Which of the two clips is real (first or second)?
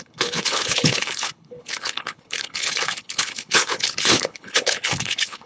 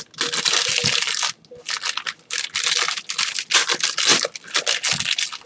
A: second